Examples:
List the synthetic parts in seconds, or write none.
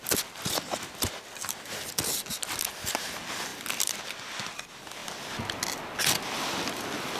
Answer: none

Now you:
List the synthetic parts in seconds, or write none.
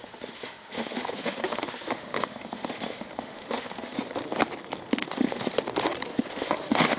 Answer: 0.0-4.0; 5.0-5.6; 6.1-7.0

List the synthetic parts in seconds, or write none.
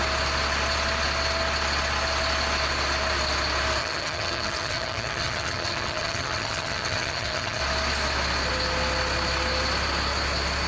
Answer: 3.8-7.6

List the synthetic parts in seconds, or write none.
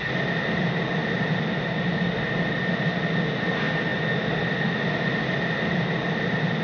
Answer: none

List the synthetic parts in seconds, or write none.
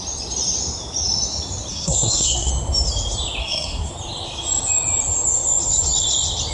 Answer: 1.7-2.5; 3.4-3.9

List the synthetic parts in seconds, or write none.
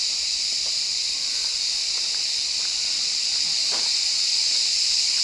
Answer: 0.0-5.2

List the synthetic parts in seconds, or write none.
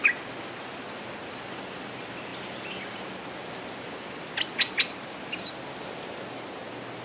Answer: none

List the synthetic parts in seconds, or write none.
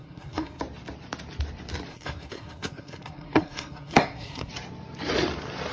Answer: 0.0-0.6; 1.9-4.5